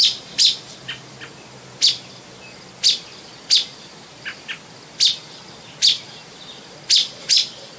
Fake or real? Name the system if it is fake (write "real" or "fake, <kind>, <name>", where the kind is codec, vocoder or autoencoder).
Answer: real